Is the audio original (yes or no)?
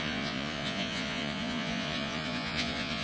no